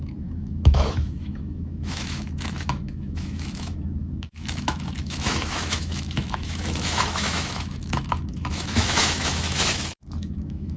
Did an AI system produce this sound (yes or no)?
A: yes